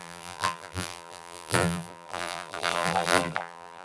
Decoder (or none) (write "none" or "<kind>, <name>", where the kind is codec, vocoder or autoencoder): vocoder, BigVGAN v2